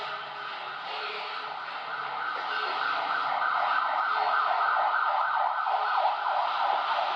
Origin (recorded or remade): recorded